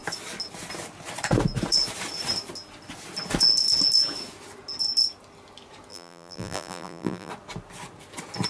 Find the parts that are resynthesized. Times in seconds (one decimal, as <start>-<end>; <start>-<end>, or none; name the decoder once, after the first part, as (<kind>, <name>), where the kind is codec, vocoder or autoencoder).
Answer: 5.9-7.3 (vocoder, BigVGAN v2)